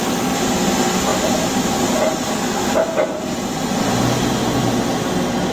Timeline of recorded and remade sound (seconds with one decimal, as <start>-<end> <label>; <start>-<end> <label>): 0.0-5.5 recorded